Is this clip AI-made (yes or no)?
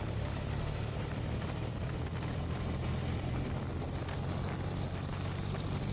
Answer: yes